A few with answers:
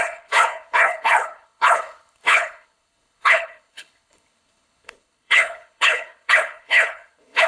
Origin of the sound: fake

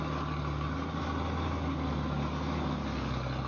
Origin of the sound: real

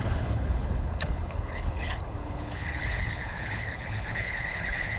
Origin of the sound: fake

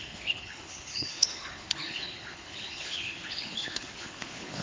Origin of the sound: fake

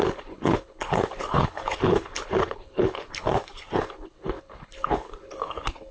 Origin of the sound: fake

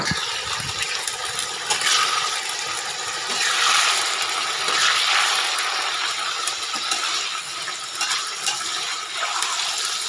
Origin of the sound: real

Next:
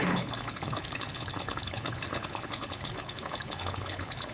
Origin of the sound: fake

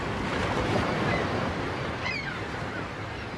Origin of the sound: real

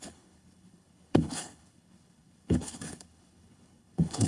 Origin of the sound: fake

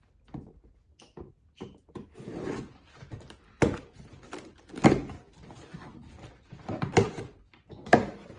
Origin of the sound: real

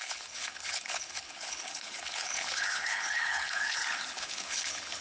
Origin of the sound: fake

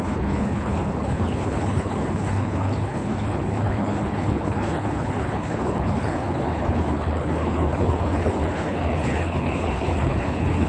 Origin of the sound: fake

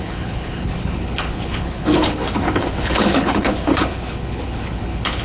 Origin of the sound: fake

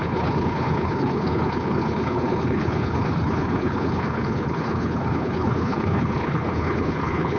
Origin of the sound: fake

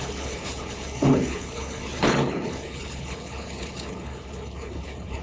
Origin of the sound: fake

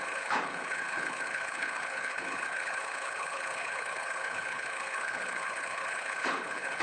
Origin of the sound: fake